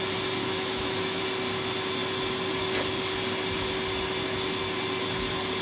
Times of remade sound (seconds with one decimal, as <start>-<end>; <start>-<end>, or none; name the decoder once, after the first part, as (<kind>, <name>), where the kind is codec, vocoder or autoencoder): 0.4-1.2 (autoencoder, DAC-VAE)